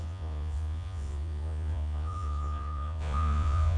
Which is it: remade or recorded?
remade